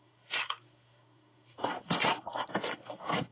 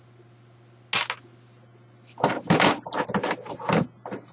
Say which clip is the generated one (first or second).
first